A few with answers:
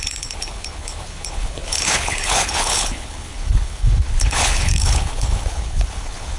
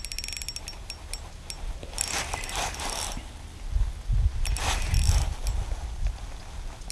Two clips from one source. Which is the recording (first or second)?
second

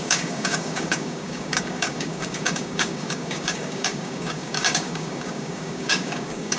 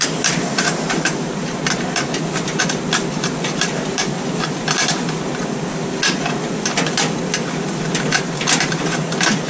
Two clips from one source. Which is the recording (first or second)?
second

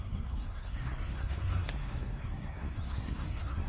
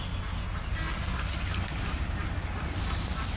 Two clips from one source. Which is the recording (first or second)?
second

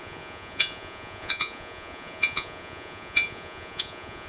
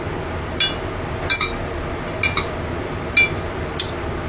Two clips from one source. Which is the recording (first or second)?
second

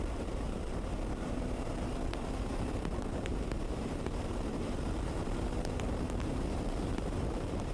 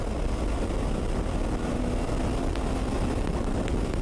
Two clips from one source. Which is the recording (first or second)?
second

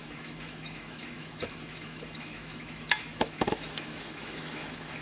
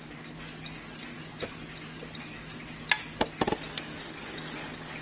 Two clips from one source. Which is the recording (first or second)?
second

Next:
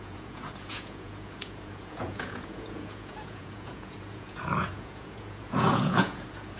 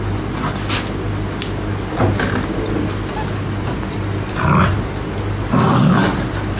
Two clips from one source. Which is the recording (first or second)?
second